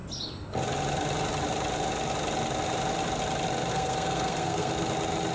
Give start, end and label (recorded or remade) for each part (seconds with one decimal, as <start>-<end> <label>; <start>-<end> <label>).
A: 0.0-3.7 recorded; 3.7-4.7 remade; 4.7-5.3 recorded

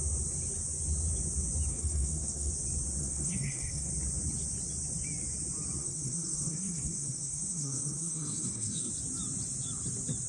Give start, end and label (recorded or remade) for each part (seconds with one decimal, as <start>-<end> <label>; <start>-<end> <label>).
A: 0.0-1.7 recorded; 1.7-2.5 remade; 2.5-3.0 recorded; 3.0-3.9 remade; 3.9-5.8 recorded; 5.8-8.9 remade; 8.9-10.3 recorded

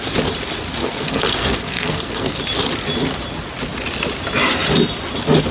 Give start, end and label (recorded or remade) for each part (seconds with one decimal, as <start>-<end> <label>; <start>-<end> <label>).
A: 0.0-0.8 recorded; 0.8-2.4 remade; 2.4-5.5 recorded

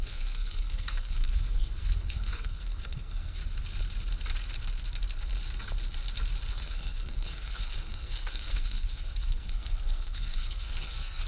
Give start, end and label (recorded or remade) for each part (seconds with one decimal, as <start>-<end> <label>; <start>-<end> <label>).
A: 0.0-3.4 remade; 3.4-6.5 recorded; 6.5-11.3 remade

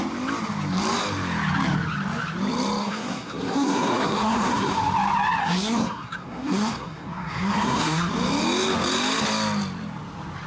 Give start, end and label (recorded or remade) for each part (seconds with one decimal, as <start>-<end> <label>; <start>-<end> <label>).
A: 0.0-2.8 recorded; 2.8-4.7 remade; 4.7-5.4 recorded; 5.4-8.1 remade; 8.1-10.5 recorded